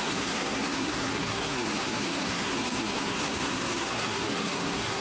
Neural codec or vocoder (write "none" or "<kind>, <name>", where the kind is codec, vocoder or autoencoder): codec, SNAC